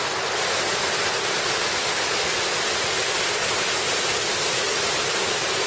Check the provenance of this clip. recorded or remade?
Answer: recorded